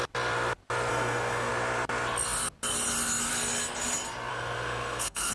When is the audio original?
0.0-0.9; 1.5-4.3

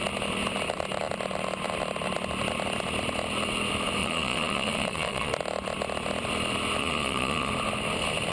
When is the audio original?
0.0-4.0; 5.3-6.8; 7.5-8.3

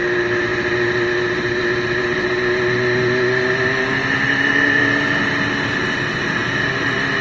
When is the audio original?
0.0-7.2

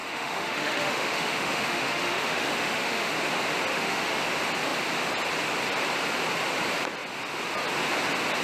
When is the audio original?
3.1-3.7; 4.2-8.4